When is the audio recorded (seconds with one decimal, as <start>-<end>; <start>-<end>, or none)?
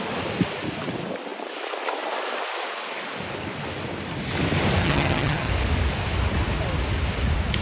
0.0-4.8; 5.5-7.6